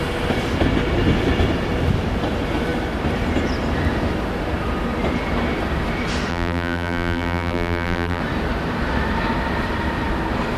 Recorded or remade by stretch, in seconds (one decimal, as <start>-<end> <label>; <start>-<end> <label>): 0.0-6.3 recorded; 6.3-8.2 remade; 8.2-10.6 recorded